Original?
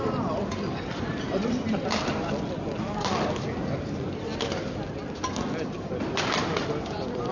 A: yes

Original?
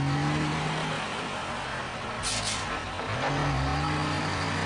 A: yes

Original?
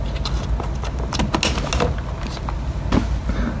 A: yes